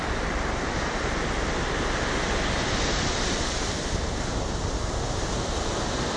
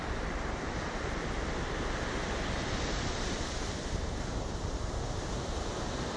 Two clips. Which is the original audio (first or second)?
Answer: first